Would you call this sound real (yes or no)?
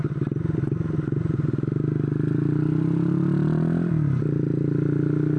yes